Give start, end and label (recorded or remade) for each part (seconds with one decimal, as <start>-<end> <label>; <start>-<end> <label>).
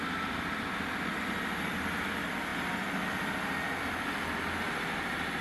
0.0-5.4 recorded